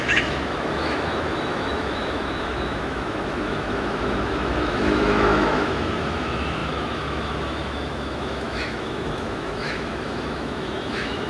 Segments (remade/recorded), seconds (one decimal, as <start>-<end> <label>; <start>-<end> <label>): 0.0-11.3 remade